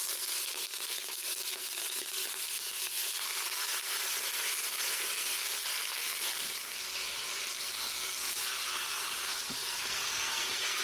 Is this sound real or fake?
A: fake